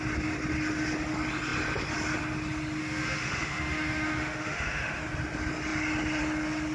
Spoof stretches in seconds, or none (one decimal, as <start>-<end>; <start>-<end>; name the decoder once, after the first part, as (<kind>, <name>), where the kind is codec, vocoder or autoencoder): 2.8-5.0 (autoencoder, DAC-VAE)